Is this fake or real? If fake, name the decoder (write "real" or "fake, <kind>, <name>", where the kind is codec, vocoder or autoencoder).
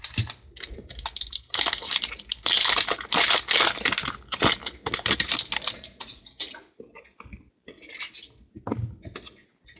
real